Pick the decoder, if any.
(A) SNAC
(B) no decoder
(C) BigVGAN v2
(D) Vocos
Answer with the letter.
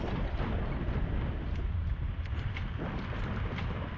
B